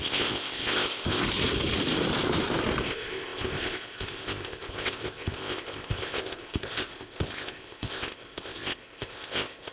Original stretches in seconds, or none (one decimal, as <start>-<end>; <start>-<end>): 1.2-2.8